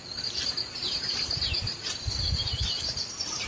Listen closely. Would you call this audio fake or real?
real